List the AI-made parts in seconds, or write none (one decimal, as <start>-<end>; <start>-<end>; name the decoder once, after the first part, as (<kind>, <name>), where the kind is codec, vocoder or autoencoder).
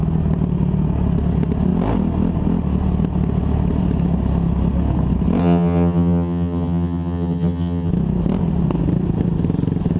5.4-7.9 (vocoder, HiFi-GAN)